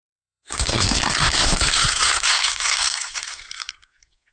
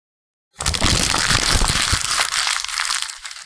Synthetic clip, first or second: first